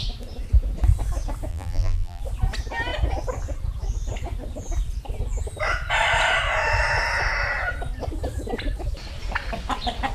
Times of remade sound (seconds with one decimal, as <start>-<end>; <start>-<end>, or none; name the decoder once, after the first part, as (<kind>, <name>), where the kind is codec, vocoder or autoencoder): 1.5-2.2 (vocoder, BigVGAN v2)